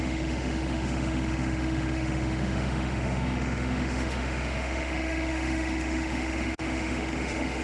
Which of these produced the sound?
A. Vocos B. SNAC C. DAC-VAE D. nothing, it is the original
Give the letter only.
C